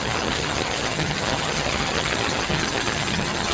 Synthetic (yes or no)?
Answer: yes